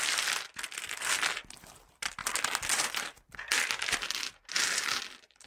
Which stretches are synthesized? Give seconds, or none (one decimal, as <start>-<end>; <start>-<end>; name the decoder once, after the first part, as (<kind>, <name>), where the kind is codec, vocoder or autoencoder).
none